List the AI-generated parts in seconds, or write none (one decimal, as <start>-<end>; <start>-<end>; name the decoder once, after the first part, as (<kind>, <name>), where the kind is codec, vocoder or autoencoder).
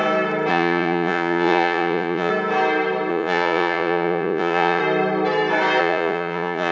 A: 0.5-2.3 (vocoder, Vocos); 3.1-4.8; 5.8-6.7